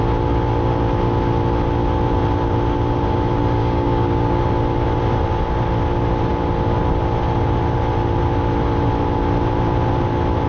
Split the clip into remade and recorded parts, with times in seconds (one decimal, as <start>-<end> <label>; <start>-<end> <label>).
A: 0.0-3.6 recorded; 3.6-4.4 remade; 4.4-10.5 recorded

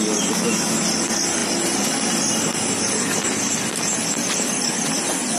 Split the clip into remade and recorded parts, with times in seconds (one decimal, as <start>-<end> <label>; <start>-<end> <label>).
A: 0.0-5.4 recorded

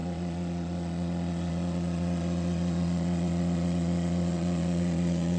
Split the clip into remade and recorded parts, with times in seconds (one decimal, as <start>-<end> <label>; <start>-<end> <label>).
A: 0.0-5.4 remade

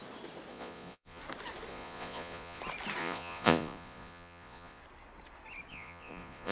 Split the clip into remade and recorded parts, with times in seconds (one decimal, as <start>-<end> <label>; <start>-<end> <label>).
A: 0.0-0.5 recorded; 0.5-1.2 remade; 1.2-1.7 recorded; 1.7-2.6 remade; 2.6-3.0 recorded; 3.0-4.8 remade; 4.8-5.7 recorded; 5.7-6.5 remade

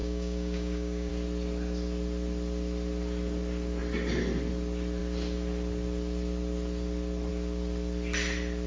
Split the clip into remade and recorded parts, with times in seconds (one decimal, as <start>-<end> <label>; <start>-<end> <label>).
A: 0.0-1.1 remade; 1.1-8.7 recorded

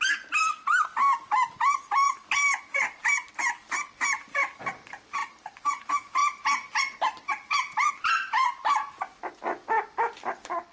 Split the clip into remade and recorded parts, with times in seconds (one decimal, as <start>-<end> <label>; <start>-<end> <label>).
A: 0.0-2.5 recorded; 2.5-3.3 remade; 3.3-5.2 recorded; 5.2-5.8 remade; 5.8-10.7 recorded